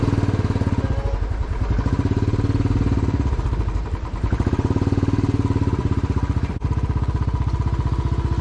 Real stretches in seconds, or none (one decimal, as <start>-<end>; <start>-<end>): 0.0-8.4

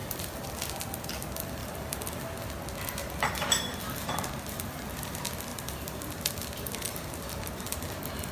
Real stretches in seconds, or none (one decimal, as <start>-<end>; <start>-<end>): 0.5-1.6; 2.2-3.0; 4.7-5.5; 6.1-8.3

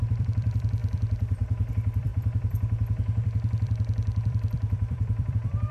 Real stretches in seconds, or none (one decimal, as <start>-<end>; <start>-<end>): none

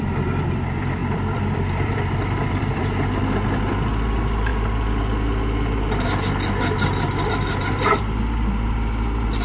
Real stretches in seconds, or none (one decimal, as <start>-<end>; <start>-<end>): 4.5-7.3